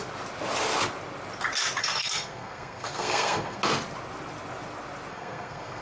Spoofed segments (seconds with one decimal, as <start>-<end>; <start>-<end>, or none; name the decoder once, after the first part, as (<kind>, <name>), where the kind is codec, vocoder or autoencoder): 1.8-3.6 (codec, SNAC); 5.1-5.8